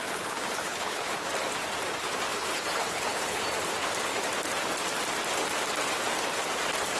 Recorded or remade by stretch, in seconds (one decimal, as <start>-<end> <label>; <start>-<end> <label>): 0.0-1.3 remade; 1.3-2.3 recorded; 2.3-3.4 remade; 3.4-7.0 recorded